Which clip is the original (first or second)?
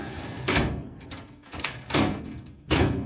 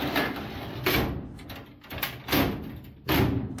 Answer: second